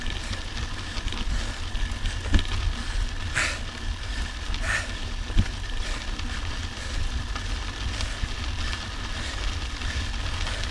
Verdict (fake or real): real